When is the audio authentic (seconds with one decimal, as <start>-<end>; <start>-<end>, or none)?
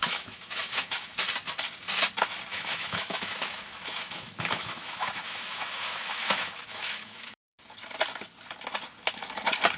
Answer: 1.1-2.5; 7.6-9.8